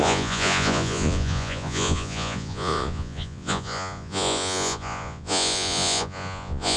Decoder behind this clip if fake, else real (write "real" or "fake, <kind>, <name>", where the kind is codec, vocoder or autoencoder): fake, vocoder, Vocos